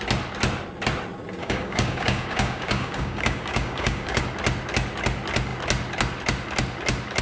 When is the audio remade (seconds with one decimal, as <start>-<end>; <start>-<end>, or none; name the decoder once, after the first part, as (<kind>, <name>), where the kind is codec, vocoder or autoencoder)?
1.4-4.2 (codec, DAC)